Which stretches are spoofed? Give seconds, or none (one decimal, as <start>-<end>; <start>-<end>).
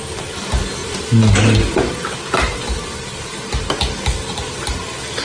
none